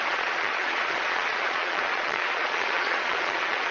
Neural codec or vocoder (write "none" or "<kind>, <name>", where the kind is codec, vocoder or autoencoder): vocoder, Vocos